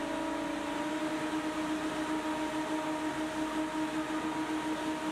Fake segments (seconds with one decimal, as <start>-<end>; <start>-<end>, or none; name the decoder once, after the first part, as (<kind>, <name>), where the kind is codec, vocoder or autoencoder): none